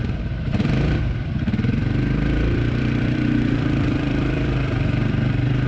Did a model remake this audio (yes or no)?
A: yes